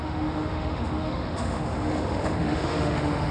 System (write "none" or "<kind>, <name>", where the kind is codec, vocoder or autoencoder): autoencoder, DAC-VAE